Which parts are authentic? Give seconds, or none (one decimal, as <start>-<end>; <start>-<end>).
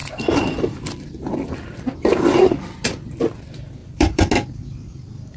3.2-3.8; 4.3-5.4